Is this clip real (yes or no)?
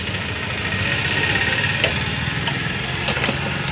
yes